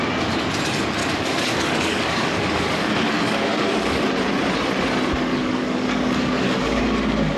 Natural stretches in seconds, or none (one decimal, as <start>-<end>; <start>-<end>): 0.0-1.0; 4.1-5.3; 6.8-7.4